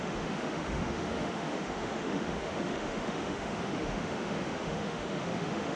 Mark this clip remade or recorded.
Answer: remade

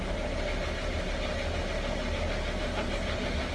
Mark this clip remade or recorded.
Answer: recorded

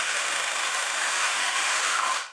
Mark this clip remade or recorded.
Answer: remade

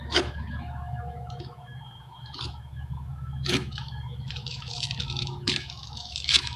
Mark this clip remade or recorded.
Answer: remade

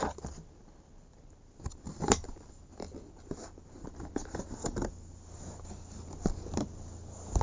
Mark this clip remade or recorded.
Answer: recorded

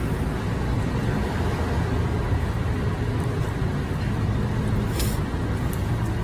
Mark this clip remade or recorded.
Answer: recorded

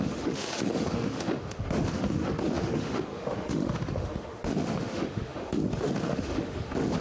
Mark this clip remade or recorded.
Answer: remade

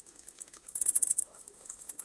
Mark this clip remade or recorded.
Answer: remade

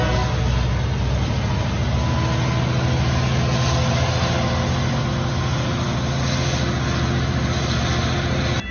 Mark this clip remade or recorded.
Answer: recorded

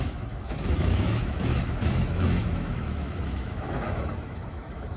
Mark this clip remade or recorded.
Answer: remade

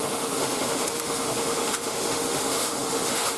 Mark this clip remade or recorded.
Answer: remade